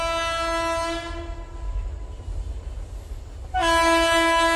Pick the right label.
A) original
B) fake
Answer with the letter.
A